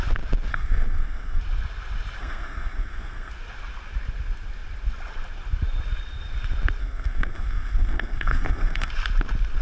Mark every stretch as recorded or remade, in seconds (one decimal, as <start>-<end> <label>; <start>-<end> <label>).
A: 0.0-0.5 recorded; 0.5-1.4 remade; 1.4-2.2 recorded; 2.2-3.3 remade; 3.3-6.8 recorded; 6.8-8.9 remade; 8.9-9.6 recorded